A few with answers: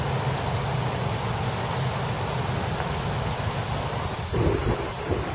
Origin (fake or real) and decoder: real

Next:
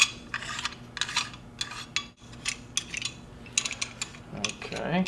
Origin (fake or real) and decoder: real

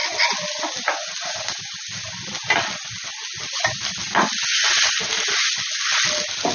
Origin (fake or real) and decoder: real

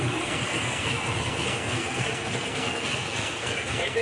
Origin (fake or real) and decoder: fake, codec, SNAC